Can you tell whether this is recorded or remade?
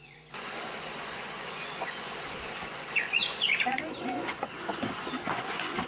remade